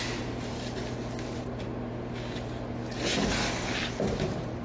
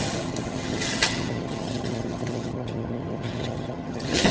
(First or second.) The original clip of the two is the first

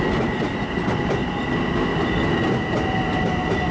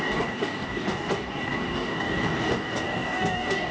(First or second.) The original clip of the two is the first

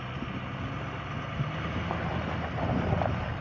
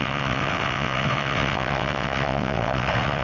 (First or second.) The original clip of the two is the first